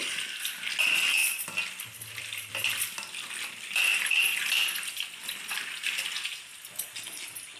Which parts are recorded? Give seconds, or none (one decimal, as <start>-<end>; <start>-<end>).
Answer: 0.0-7.6